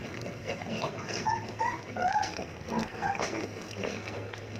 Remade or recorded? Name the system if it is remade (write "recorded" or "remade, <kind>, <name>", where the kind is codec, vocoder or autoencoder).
remade, codec, SNAC